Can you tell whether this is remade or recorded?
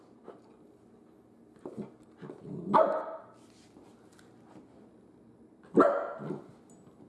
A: recorded